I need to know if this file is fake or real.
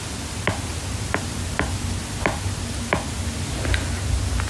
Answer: real